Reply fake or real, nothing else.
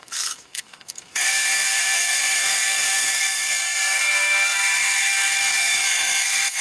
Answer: fake